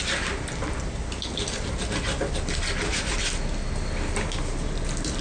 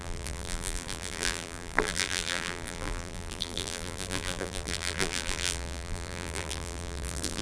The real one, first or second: first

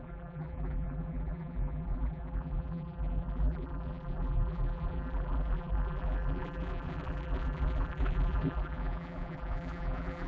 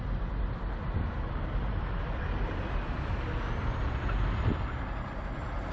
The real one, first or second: second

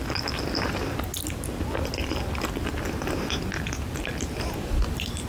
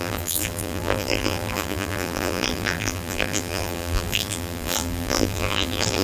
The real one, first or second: first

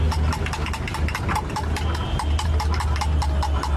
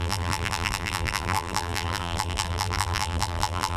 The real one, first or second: first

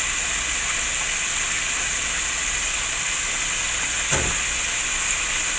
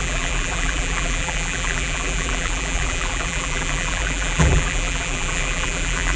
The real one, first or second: first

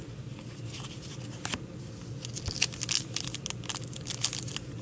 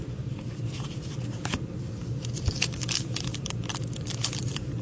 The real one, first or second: first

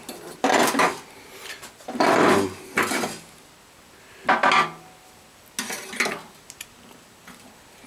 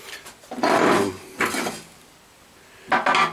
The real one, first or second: first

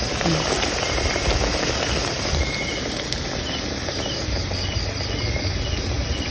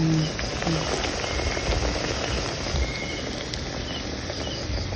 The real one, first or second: second